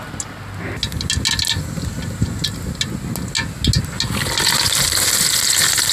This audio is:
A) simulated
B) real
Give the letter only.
B